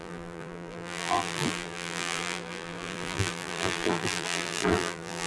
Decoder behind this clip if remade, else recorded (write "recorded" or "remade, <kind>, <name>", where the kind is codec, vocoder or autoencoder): remade, vocoder, BigVGAN v2